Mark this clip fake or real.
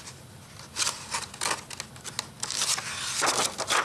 real